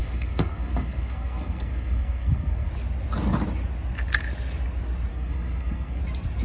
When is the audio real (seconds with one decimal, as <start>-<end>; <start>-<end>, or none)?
2.7-5.1; 6.0-6.4